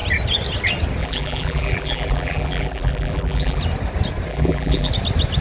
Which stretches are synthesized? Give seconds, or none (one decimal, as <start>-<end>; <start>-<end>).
1.0-3.6; 4.3-4.9